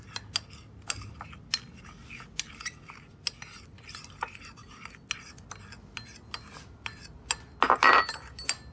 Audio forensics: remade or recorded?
recorded